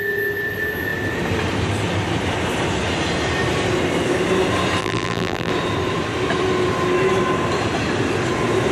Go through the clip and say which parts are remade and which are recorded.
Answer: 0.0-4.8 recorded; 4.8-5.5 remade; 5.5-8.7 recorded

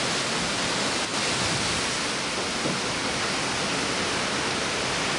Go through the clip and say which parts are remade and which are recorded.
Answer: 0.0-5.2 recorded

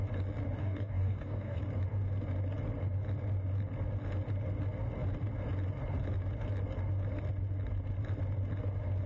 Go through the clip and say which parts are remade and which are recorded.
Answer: 0.0-0.6 recorded; 0.6-1.6 remade; 1.6-9.1 recorded